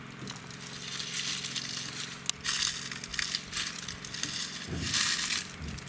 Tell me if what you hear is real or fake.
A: real